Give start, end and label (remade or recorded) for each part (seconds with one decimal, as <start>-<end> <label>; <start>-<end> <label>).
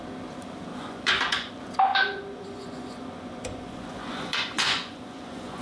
0.0-0.7 recorded; 0.7-1.5 remade; 1.5-1.9 recorded; 1.9-5.6 remade